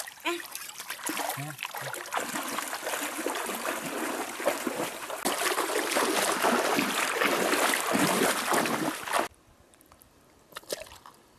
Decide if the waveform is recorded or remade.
recorded